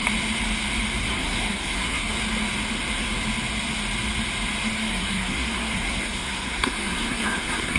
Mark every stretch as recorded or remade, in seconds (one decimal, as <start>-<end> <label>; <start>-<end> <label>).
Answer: 0.0-1.0 recorded; 1.0-2.2 remade; 2.2-4.6 recorded; 4.6-7.8 remade